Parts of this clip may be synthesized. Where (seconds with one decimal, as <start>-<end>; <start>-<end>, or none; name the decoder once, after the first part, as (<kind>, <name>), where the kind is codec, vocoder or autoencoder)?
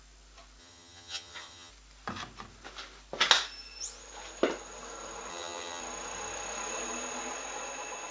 0.6-1.7 (vocoder, HiFi-GAN); 5.3-5.8